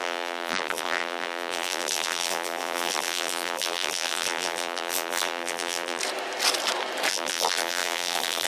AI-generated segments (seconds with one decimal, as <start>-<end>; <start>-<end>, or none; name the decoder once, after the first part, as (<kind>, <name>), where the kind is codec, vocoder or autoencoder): 0.0-6.0 (vocoder, BigVGAN v2); 7.1-8.5